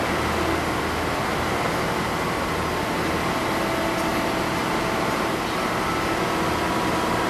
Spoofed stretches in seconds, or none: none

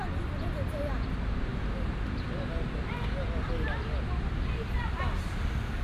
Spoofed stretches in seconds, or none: 1.5-2.8 (vocoder, BigVGAN v2)

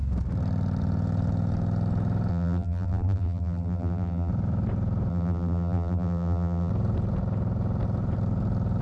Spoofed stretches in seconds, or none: 2.3-4.3 (vocoder, BigVGAN v2); 5.1-6.7

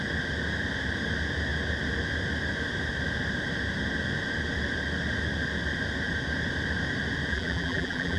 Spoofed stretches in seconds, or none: 7.3-8.2 (vocoder, BigVGAN v2)

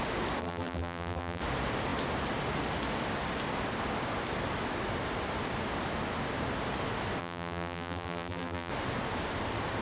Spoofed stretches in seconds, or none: 0.4-1.4 (vocoder, BigVGAN v2); 7.2-8.7